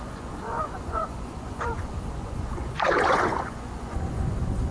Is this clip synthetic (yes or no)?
yes